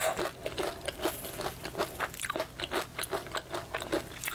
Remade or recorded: recorded